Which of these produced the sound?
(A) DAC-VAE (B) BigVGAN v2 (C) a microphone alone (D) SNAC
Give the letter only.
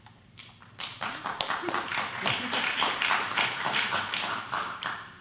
B